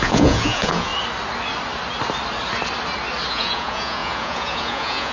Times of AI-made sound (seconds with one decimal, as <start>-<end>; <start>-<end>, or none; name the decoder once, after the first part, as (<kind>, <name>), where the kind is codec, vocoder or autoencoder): 0.0-0.9 (vocoder, Vocos); 3.3-5.1